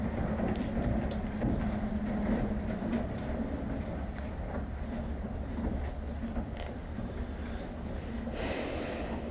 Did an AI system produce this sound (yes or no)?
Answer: no